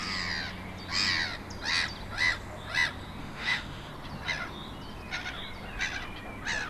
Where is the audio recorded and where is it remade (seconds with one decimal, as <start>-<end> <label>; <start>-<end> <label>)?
0.0-3.2 recorded; 3.2-3.9 remade; 3.9-6.7 recorded